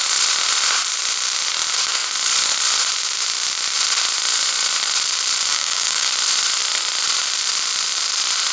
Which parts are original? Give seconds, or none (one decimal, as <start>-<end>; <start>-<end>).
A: 0.0-5.5; 6.1-8.5